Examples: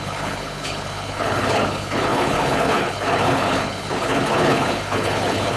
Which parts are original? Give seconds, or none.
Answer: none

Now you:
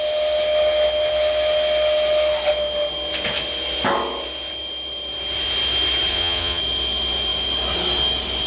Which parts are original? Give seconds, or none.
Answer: 0.0-6.1; 6.6-8.5